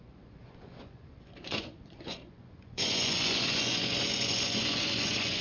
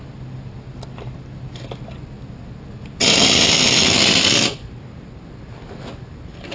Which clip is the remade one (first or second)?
first